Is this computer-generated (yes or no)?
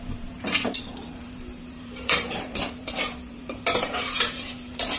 yes